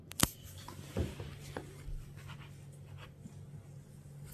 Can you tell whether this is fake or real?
real